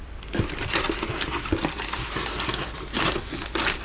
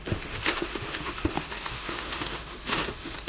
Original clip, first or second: first